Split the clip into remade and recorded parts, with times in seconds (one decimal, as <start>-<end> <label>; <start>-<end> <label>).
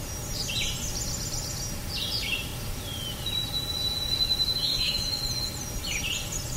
0.0-4.7 recorded; 4.7-5.2 remade; 5.2-6.6 recorded